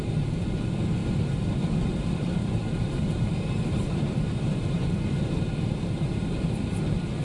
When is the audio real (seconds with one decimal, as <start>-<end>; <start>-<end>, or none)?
0.0-1.0; 5.3-7.2